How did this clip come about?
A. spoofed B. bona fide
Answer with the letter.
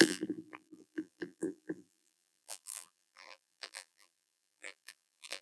A